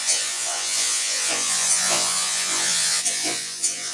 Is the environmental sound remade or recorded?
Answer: remade